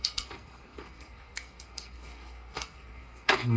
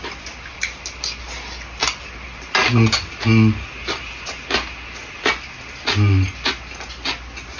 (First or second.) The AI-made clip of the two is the first